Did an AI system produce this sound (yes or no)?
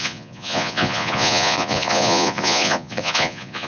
yes